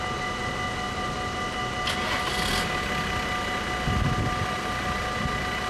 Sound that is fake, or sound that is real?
real